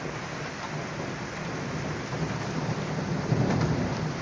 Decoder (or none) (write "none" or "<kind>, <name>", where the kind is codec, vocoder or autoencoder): vocoder, BigVGAN v2